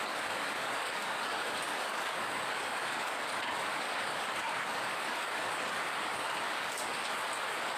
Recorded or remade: remade